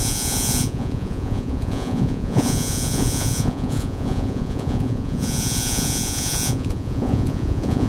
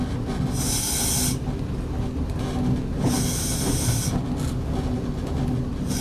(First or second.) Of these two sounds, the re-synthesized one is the first